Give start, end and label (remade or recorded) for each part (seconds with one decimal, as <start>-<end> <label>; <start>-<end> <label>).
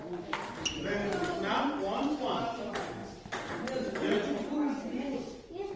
0.0-5.8 recorded